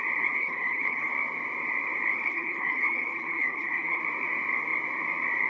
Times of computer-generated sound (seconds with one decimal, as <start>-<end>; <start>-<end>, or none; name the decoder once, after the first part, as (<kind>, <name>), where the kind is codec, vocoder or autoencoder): 0.4-1.1 (codec, HILCodec); 2.1-4.0